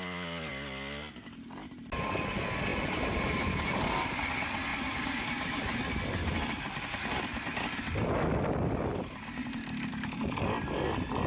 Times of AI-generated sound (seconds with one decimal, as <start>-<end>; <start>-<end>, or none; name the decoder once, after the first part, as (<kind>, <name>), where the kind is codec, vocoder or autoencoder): 2.7-4.2 (vocoder, BigVGAN v2); 4.7-6.0